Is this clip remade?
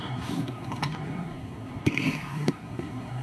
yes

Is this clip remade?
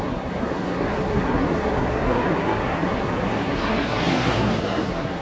yes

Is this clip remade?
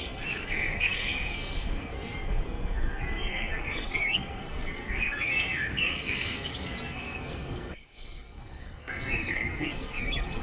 yes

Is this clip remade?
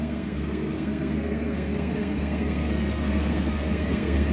yes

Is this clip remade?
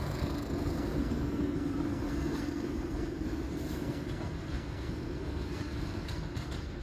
yes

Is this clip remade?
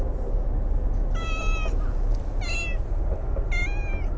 no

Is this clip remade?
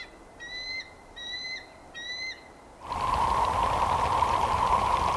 no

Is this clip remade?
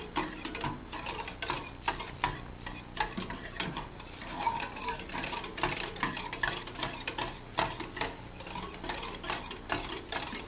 no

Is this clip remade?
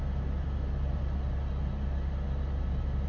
no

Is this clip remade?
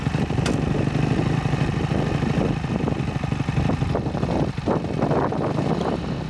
no